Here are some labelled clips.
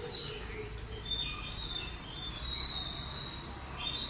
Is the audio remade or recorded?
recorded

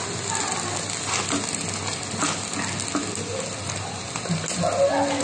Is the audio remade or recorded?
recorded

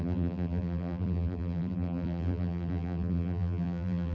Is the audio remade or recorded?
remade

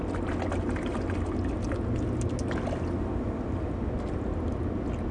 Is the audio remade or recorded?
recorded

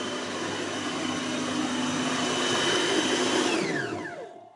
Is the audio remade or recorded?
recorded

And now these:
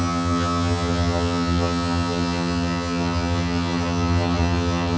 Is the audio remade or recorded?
remade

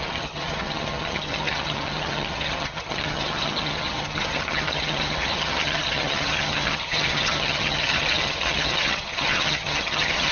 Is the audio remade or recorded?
remade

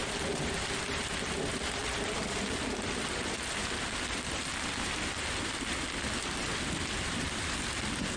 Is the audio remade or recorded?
recorded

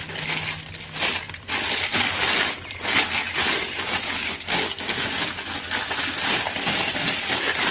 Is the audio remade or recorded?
recorded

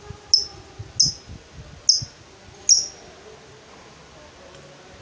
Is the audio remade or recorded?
recorded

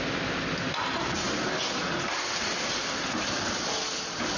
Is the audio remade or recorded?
recorded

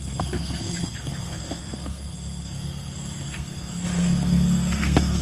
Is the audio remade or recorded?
remade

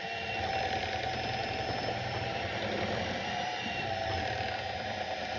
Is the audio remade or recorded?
remade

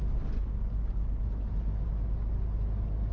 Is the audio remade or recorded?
recorded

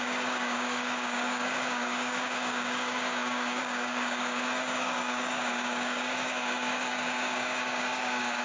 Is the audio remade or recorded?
remade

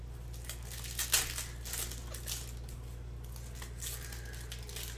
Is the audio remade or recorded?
recorded